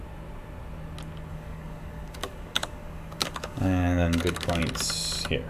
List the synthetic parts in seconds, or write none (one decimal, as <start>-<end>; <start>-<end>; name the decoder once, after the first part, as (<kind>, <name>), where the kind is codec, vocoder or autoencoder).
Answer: 1.3-4.6 (codec, DAC)